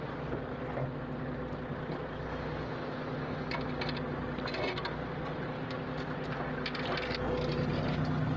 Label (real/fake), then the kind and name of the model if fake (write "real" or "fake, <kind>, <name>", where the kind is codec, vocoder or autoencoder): real